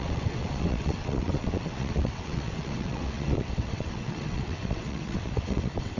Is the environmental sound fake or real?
fake